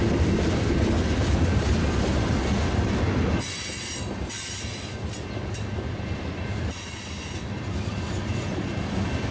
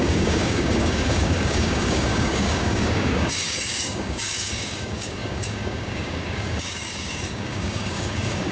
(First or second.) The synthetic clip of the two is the second